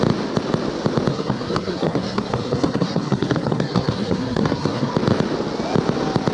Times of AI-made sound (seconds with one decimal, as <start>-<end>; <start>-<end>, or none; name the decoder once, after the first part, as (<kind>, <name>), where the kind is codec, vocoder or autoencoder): 1.1-4.9 (codec, SNAC)